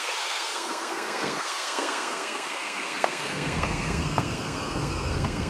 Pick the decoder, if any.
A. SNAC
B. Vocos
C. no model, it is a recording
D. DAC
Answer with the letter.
A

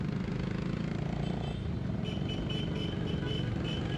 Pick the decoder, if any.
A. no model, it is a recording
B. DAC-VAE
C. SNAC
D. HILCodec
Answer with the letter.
A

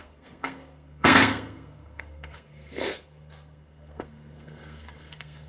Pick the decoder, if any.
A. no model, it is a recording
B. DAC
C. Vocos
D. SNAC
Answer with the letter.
D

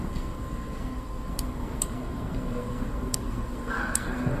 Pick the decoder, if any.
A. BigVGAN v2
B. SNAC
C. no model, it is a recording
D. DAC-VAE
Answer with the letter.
B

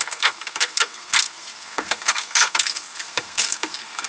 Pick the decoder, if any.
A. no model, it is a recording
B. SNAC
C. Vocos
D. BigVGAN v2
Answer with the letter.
B